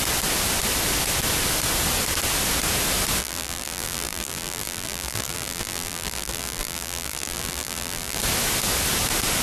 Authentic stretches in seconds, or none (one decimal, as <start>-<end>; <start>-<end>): 0.0-3.2; 8.2-9.4